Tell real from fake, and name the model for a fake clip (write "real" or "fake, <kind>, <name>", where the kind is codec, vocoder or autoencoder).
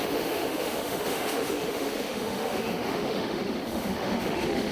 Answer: fake, autoencoder, DAC-VAE